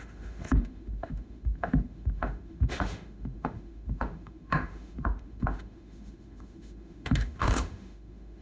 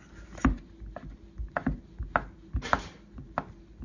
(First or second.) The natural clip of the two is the second